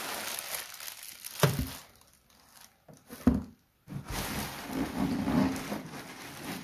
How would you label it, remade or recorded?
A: recorded